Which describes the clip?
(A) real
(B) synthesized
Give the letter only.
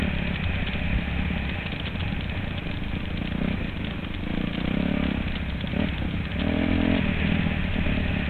A